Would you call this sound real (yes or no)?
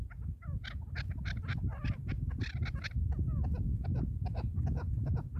yes